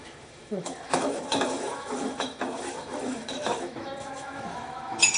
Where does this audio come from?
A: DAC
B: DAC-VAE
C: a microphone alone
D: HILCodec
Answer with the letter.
B